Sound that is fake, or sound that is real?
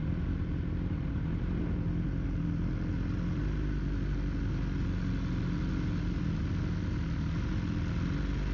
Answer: real